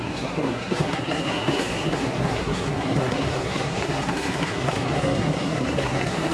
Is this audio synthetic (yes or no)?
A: yes